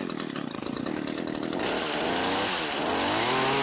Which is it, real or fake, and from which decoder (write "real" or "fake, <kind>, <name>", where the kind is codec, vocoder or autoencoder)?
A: real